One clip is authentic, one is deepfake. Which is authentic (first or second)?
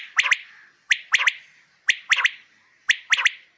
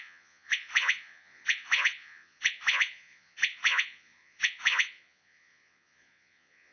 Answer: first